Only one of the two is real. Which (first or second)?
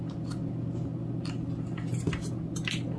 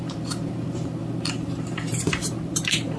first